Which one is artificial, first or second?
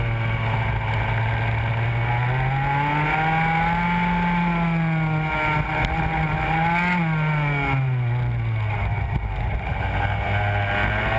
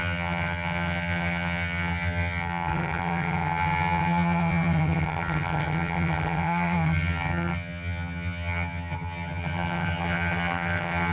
second